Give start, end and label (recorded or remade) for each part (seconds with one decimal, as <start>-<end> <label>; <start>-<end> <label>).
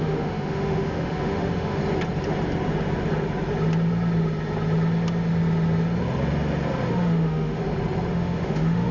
0.0-1.8 remade; 1.8-6.9 recorded; 6.9-7.6 remade; 7.6-8.1 recorded; 8.1-8.9 remade